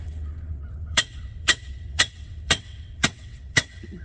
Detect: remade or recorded remade